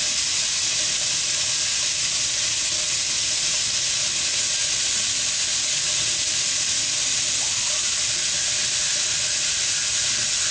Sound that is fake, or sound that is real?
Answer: real